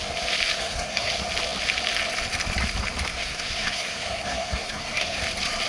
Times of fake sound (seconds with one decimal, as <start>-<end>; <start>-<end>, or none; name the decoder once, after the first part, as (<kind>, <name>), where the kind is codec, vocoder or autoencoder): 0.6-1.1 (codec, SNAC); 3.1-5.2